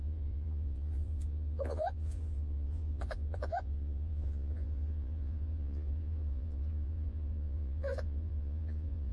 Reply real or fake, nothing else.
fake